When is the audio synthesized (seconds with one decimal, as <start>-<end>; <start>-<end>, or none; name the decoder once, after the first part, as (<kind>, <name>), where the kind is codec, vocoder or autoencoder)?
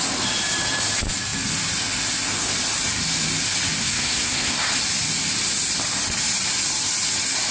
3.8-4.6 (codec, SNAC)